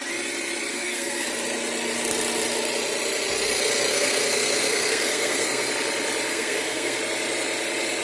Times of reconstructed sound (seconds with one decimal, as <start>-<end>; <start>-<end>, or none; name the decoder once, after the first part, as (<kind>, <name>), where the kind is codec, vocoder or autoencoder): 0.7-1.3 (codec, SNAC); 3.9-5.7; 6.3-7.0